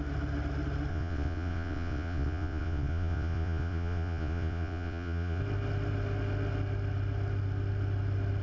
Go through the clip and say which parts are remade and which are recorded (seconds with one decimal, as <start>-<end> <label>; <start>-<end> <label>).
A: 0.0-0.9 recorded; 0.9-5.4 remade; 5.4-8.4 recorded